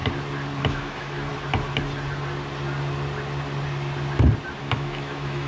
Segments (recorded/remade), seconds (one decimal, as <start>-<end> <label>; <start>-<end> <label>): 0.0-0.6 recorded; 0.6-1.3 remade; 1.3-4.6 recorded; 4.6-5.5 remade